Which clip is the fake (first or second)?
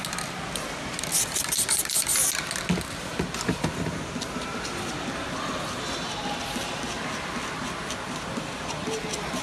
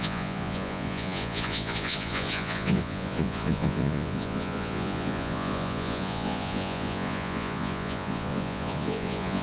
second